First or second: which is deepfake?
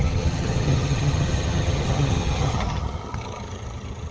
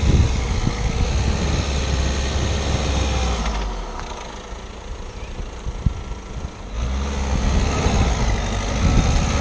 first